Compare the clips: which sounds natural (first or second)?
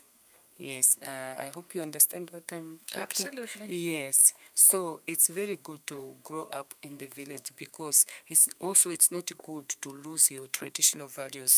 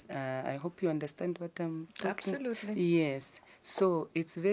second